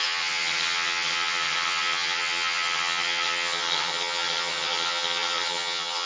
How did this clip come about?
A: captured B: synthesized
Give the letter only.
B